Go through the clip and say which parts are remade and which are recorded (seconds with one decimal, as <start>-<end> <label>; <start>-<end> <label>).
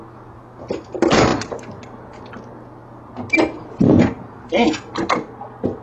0.0-5.8 recorded